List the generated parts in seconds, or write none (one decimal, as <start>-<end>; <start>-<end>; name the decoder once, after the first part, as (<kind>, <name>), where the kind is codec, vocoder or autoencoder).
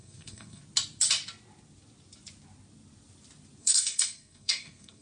0.0-0.6 (codec, SNAC); 3.6-5.0